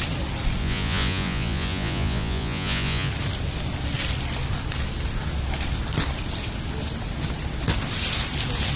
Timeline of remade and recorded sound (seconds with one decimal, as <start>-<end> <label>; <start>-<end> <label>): 0.0-0.6 recorded; 0.6-3.1 remade; 3.1-8.8 recorded